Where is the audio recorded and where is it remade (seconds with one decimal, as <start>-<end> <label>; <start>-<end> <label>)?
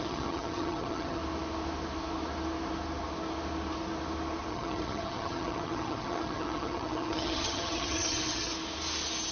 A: 0.0-1.2 remade; 1.2-4.5 recorded; 4.5-8.5 remade; 8.5-9.3 recorded